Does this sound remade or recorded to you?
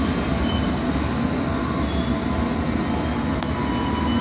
recorded